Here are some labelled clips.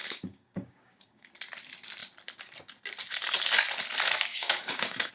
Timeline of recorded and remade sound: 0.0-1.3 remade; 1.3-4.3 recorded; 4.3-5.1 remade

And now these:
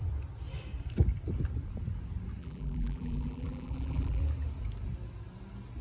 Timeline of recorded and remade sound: 0.0-2.4 recorded; 2.4-4.2 remade; 4.2-5.8 recorded

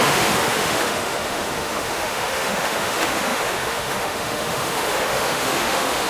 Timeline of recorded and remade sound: 0.0-6.1 remade

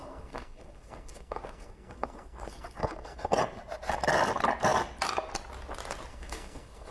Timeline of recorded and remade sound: 0.0-3.4 remade; 3.4-6.1 recorded; 6.1-6.9 remade

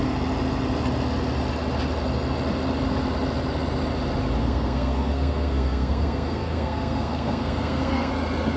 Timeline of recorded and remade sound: 0.0-4.4 recorded; 4.4-8.1 remade; 8.1-8.6 recorded